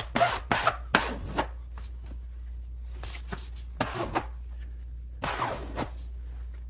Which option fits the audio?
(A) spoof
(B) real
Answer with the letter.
B